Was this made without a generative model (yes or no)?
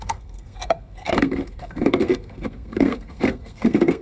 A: no